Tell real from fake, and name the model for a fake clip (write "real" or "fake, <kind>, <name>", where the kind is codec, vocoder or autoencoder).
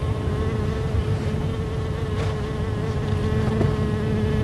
real